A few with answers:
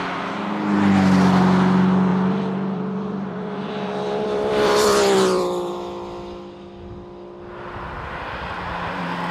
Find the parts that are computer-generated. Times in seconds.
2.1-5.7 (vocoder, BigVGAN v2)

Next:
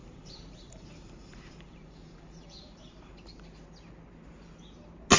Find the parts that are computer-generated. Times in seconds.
0.0-3.1 (vocoder, BigVGAN v2)

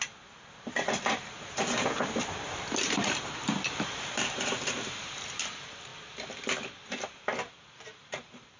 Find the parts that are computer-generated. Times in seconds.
0.0-5.9 (vocoder, BigVGAN v2); 7.5-8.6

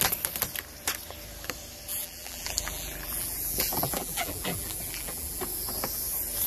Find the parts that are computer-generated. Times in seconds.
1.9-5.4 (vocoder, BigVGAN v2)

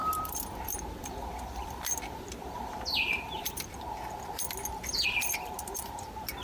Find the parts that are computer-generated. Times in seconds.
0.0-3.8 (vocoder, BigVGAN v2)

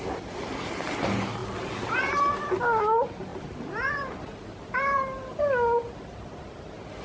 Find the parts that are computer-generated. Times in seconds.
1.4-2.5 (vocoder, BigVGAN v2); 3.3-5.4